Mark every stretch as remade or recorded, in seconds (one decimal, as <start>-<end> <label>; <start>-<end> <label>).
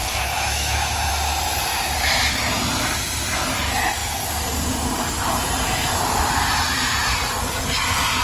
0.0-1.1 remade; 1.1-8.2 recorded